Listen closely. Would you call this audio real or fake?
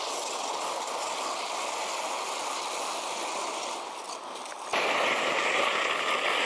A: real